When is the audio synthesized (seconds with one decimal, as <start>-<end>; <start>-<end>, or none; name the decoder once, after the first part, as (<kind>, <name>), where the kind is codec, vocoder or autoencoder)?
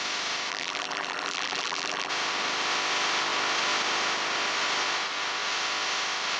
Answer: 0.5-2.1 (vocoder, BigVGAN v2)